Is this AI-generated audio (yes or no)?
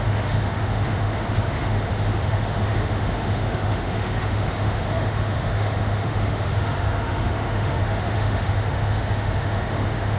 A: yes